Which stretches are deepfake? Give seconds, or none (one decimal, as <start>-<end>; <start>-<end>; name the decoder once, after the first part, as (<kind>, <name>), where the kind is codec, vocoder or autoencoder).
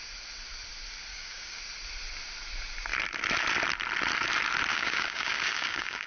1.1-1.6 (codec, DAC); 4.7-6.1